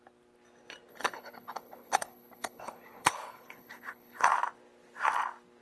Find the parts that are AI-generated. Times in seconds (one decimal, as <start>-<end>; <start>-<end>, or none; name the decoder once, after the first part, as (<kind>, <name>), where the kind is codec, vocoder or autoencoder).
0.9-4.3 (codec, HILCodec)